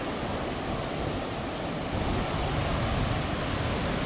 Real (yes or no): yes